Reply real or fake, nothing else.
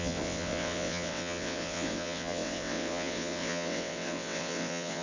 fake